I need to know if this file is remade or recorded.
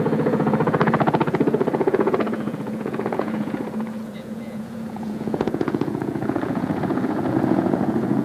remade